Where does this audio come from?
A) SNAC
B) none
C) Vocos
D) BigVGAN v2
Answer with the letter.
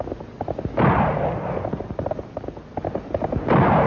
B